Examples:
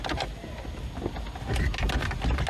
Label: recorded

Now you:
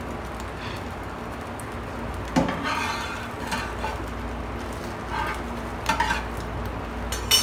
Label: recorded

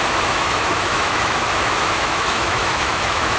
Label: remade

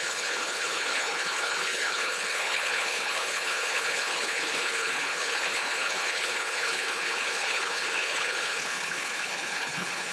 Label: remade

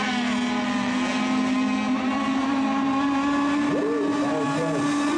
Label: recorded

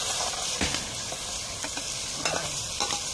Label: remade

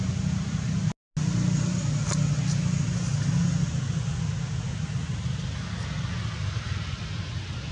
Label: recorded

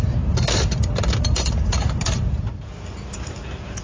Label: recorded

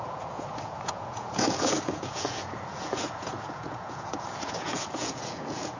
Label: remade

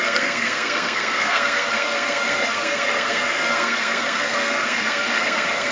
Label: remade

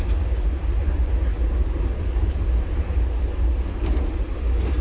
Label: recorded